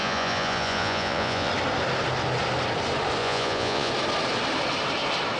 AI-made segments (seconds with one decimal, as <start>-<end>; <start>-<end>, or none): 0.0-1.5; 3.2-3.9